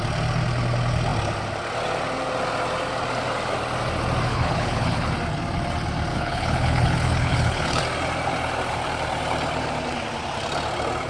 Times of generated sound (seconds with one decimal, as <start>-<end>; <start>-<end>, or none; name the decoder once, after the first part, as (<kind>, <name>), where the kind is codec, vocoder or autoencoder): 4.3-5.1 (codec, HILCodec); 6.1-7.8